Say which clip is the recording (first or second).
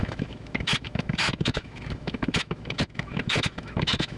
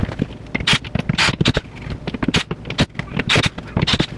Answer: second